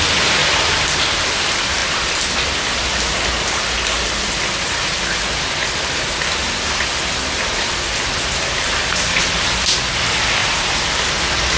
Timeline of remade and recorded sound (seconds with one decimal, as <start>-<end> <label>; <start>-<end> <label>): 0.0-10.4 recorded; 10.4-11.1 remade; 11.1-11.6 recorded